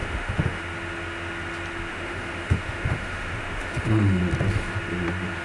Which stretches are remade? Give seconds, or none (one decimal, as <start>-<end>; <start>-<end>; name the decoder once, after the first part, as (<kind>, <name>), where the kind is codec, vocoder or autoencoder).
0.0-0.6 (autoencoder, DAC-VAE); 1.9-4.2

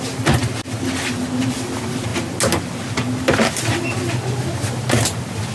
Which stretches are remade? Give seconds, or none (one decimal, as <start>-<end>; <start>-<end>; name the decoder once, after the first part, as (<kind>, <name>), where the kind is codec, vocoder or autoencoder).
none

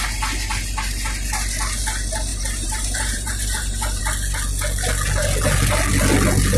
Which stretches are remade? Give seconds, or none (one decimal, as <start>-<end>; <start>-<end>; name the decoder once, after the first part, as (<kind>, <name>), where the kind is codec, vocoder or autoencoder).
2.3-4.0 (vocoder, BigVGAN v2)